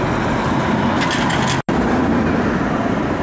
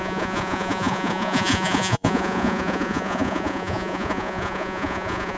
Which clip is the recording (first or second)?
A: first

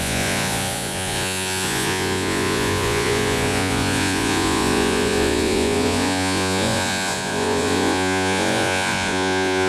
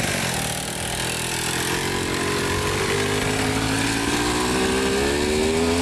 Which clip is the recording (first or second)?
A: second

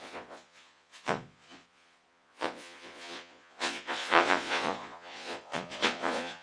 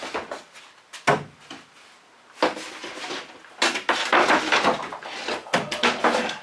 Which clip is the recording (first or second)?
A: second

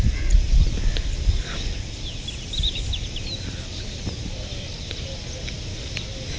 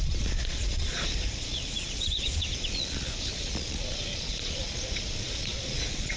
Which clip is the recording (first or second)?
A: first